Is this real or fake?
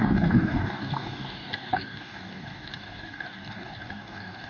fake